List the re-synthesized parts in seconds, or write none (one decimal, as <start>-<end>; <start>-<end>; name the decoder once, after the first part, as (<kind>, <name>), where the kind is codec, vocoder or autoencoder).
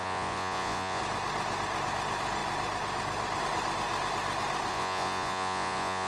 0.0-1.0 (vocoder, Vocos); 4.7-6.1